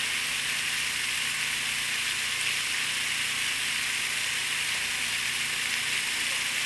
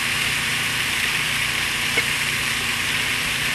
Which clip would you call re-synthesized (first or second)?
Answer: second